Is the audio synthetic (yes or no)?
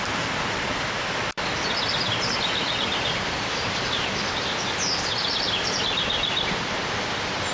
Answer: no